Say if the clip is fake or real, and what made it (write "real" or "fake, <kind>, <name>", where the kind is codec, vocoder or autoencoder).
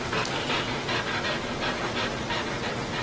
real